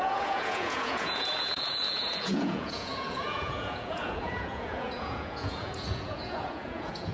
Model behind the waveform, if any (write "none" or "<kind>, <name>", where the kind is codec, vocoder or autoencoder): vocoder, Vocos